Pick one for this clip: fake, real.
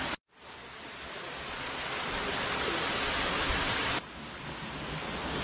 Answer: real